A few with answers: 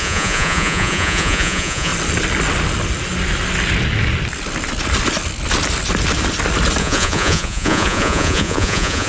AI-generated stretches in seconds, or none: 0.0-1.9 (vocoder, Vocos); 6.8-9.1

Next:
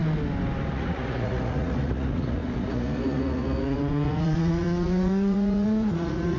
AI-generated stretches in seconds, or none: 0.7-6.4 (vocoder, Vocos)

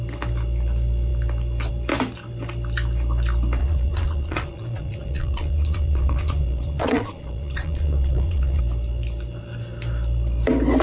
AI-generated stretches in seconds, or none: 3.6-8.6 (vocoder, Vocos)

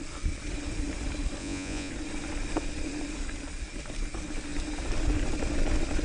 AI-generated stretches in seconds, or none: 1.4-1.9 (vocoder, Vocos)